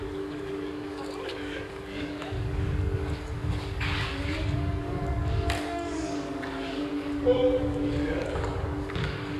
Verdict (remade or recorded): remade